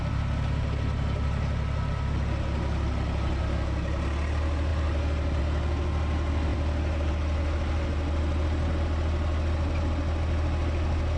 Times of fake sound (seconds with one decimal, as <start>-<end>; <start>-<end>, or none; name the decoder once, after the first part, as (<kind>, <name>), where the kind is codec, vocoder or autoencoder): 6.5-7.1 (vocoder, BigVGAN v2)